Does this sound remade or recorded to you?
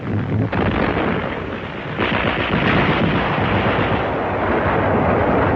recorded